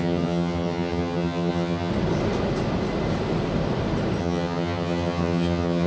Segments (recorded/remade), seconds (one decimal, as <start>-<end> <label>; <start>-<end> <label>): 0.0-1.9 remade; 1.9-4.2 recorded; 4.2-5.9 remade